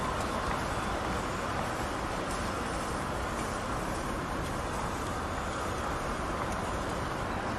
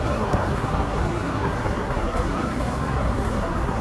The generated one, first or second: second